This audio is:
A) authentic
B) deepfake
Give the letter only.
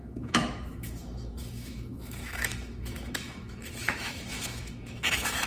B